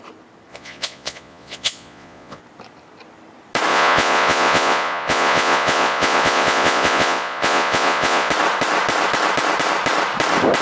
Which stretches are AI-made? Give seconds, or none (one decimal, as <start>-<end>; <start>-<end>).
0.5-2.4; 3.7-8.3